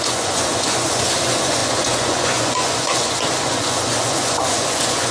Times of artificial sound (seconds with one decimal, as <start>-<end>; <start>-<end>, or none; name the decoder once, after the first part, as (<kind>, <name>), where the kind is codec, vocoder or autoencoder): 0.0-5.1 (vocoder, Vocos)